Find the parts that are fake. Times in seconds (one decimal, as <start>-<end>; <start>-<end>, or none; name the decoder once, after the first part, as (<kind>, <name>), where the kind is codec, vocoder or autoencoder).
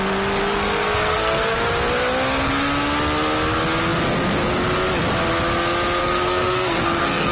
0.4-1.6 (codec, SNAC); 6.0-7.3